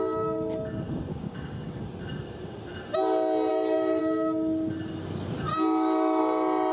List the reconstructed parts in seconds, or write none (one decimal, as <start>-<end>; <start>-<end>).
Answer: 1.1-1.8; 3.5-4.0; 5.5-6.2